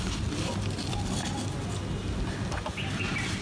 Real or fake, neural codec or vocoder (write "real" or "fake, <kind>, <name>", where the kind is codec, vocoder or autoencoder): real